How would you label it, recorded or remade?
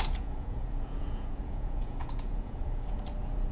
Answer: remade